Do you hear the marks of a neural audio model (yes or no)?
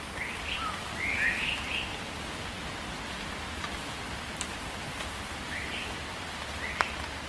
no